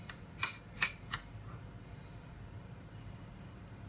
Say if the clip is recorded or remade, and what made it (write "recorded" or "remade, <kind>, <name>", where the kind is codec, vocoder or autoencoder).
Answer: remade, vocoder, BigVGAN v2